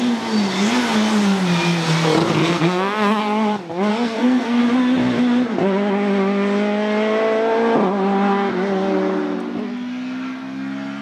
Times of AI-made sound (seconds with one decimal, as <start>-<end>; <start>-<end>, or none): 2.4-3.2; 3.9-4.6